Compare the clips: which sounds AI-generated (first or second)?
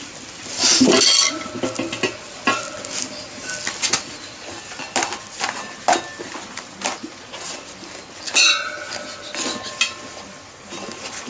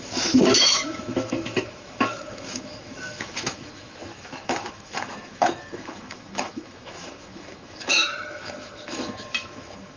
second